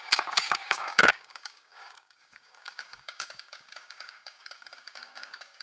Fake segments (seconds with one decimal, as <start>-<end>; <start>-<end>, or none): 0.0-5.6